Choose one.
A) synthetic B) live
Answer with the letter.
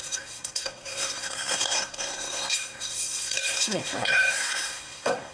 A